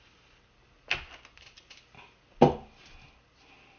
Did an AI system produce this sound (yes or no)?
no